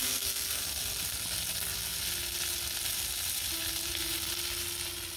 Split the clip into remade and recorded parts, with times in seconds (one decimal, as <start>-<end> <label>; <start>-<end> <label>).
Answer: 0.0-0.6 remade; 0.6-5.2 recorded